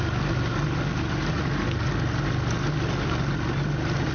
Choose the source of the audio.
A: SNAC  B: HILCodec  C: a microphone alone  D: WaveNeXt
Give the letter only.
C